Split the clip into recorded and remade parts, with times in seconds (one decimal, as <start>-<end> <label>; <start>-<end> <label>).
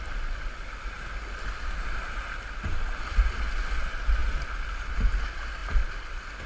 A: 0.0-6.5 recorded